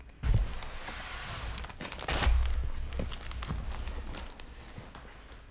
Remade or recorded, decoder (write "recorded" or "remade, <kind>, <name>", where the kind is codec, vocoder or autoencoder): recorded